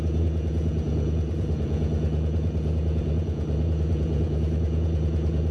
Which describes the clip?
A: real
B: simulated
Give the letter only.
B